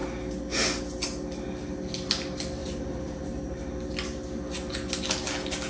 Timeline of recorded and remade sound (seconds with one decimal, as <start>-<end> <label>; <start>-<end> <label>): 0.0-2.6 recorded; 2.6-3.7 remade; 3.7-5.7 recorded